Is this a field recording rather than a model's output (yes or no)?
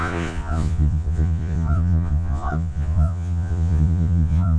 no